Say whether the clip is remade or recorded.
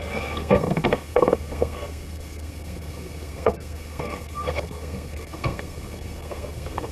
remade